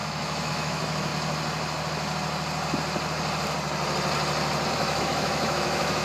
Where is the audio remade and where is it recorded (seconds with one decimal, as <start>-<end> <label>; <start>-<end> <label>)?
0.0-1.1 remade; 1.1-4.7 recorded; 4.7-6.0 remade